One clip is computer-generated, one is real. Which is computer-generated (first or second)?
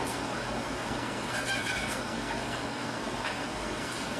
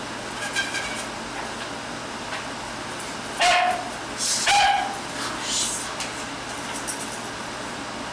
first